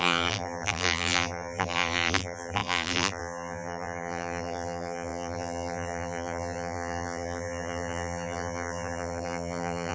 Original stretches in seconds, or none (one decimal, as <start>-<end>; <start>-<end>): none